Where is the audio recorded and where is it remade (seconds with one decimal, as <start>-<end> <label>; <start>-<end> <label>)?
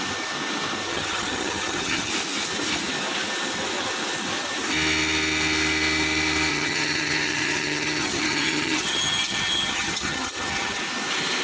0.0-0.9 recorded; 0.9-2.1 remade; 2.1-6.5 recorded; 6.5-10.8 remade; 10.8-11.4 recorded